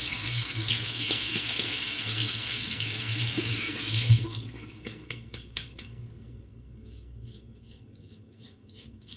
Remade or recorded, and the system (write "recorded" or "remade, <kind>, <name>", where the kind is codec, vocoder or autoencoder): remade, codec, SNAC